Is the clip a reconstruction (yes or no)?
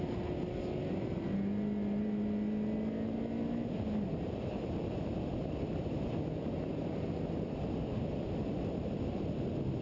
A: no